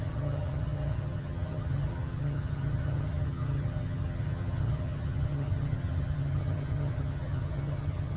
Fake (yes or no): yes